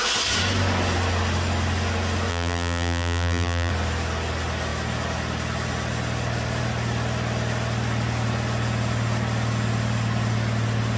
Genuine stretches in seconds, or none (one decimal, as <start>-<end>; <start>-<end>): 0.0-2.3; 3.7-11.0

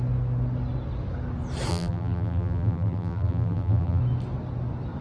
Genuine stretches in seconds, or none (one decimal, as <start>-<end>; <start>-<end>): 0.0-1.7; 4.0-5.0